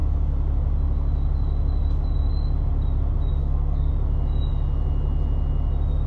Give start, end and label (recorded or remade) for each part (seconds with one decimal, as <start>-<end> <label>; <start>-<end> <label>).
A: 0.0-3.4 recorded; 3.4-3.9 remade; 3.9-6.1 recorded